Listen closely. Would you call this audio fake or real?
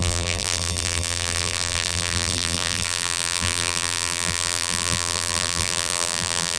fake